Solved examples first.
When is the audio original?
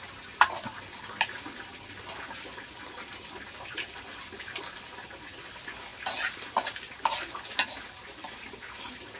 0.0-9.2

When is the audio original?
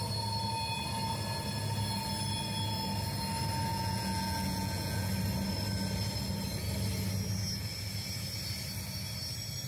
0.0-3.7; 5.1-9.7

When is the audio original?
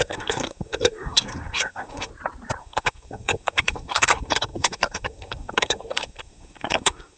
2.1-2.6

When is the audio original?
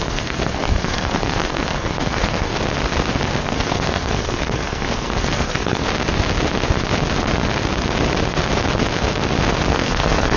2.5-3.4; 5.8-9.7